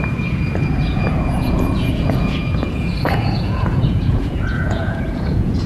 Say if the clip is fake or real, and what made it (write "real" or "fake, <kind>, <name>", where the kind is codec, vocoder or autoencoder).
fake, vocoder, Vocos